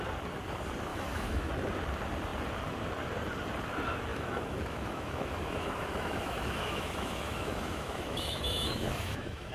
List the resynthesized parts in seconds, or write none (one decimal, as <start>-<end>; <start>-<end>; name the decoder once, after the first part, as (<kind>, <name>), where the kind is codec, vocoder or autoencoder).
0.9-1.5 (autoencoder, DAC-VAE); 4.1-9.5